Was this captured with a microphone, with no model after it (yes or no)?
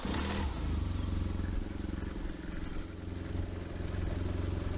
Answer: yes